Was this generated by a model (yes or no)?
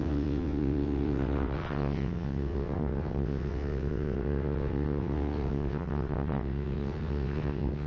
yes